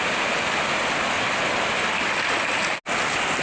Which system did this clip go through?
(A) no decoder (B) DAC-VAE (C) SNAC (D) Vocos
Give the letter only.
A